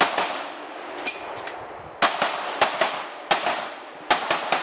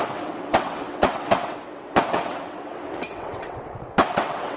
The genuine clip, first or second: first